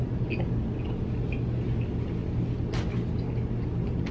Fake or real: real